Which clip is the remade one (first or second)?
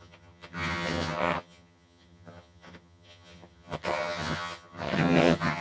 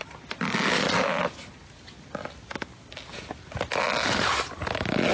first